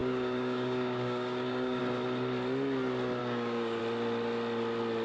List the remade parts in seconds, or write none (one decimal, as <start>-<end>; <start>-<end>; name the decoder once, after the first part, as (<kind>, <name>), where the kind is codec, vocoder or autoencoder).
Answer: 0.0-1.8 (codec, DAC); 3.2-3.8